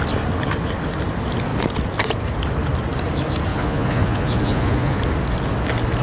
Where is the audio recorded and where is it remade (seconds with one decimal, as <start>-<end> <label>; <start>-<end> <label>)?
0.0-3.5 recorded; 3.5-5.0 remade; 5.0-6.0 recorded